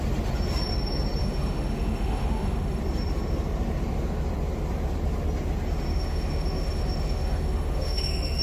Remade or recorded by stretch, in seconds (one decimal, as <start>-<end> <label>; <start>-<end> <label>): 0.0-1.2 recorded; 1.2-2.8 remade; 2.8-5.9 recorded; 5.9-8.4 remade